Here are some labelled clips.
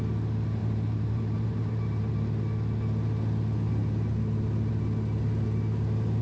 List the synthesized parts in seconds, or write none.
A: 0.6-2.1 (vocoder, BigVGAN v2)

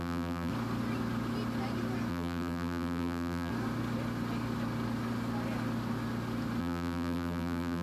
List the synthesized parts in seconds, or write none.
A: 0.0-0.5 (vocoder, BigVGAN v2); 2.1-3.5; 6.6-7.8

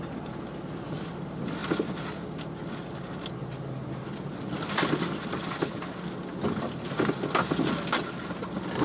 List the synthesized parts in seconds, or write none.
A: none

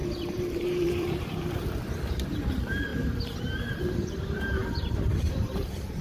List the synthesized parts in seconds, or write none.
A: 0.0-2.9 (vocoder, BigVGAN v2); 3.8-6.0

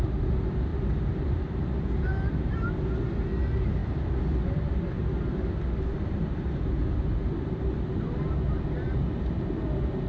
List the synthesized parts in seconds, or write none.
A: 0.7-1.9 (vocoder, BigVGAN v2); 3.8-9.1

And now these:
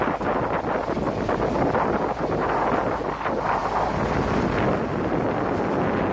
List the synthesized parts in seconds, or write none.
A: none